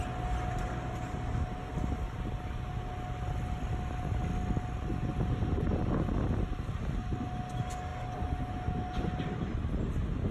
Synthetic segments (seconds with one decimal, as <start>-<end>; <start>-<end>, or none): none

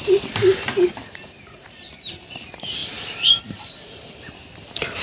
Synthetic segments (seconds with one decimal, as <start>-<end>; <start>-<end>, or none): 0.5-1.9; 2.8-4.2